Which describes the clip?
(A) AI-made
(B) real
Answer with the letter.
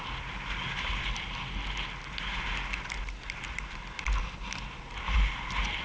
B